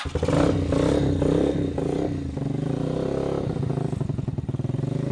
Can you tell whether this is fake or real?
real